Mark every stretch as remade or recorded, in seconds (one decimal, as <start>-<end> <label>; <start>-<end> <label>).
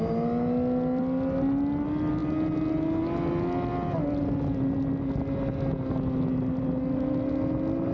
0.0-7.9 recorded